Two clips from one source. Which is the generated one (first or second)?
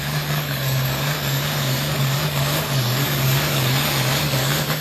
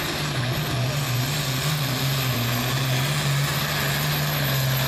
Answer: first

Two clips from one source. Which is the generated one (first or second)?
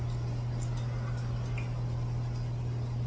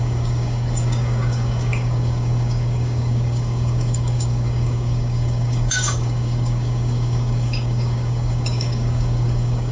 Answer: second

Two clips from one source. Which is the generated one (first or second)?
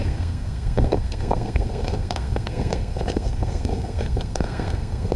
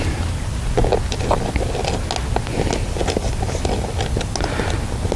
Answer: first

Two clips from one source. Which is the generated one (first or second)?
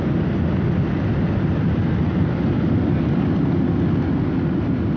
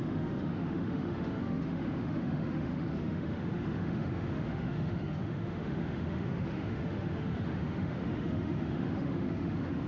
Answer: second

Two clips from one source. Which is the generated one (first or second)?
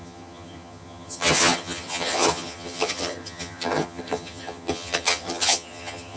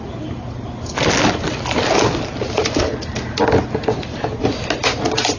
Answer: first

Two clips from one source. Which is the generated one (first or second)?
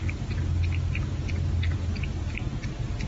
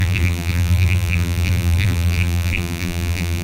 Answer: second